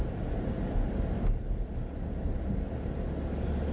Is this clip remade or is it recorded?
recorded